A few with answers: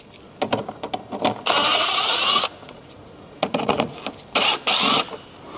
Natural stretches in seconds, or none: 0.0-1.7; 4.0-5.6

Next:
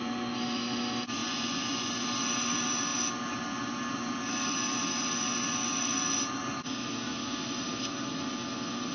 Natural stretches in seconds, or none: 0.0-1.2; 1.9-8.9

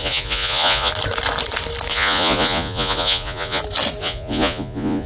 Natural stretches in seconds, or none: 0.9-1.9; 3.6-4.0

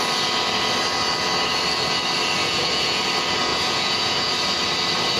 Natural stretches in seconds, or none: 0.0-2.4; 3.0-3.5; 4.3-5.2

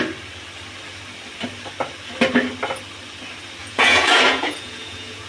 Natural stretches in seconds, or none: 0.0-3.6

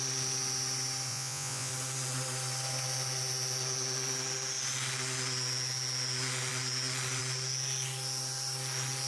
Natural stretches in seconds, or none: 0.0-1.1; 1.7-9.1

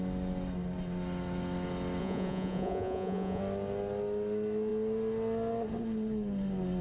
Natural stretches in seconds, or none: 0.0-2.0; 3.4-6.8